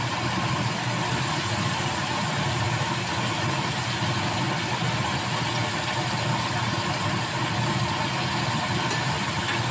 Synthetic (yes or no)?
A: no